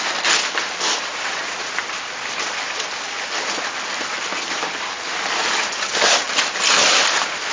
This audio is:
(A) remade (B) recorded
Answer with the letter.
B